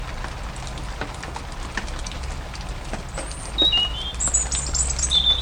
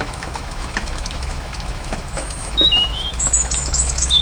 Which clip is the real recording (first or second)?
first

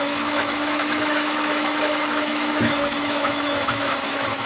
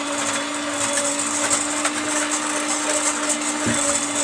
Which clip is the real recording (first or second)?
second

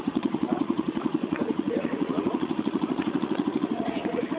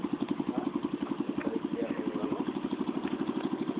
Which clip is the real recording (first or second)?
second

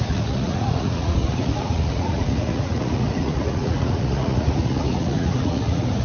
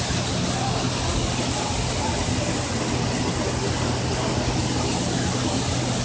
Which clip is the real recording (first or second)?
second